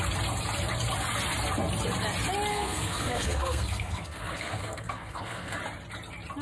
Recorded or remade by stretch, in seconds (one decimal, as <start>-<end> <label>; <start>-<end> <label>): 0.0-2.5 recorded; 2.5-5.6 remade; 5.6-6.4 recorded